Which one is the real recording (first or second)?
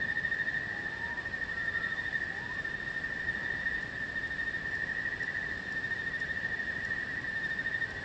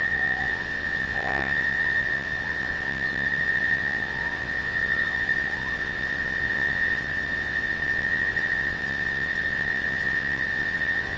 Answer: first